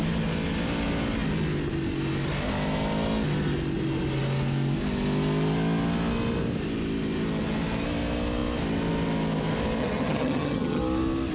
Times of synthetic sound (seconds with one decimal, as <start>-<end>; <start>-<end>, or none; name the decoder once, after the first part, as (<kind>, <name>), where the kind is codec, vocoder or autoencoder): 9.8-10.8 (vocoder, HiFi-GAN)